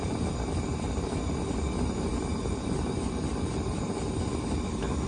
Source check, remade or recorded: recorded